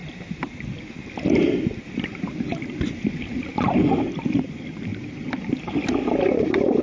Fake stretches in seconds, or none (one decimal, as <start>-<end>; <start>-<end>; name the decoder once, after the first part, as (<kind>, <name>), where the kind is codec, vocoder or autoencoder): none